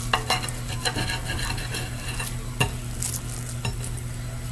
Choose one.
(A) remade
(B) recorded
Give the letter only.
B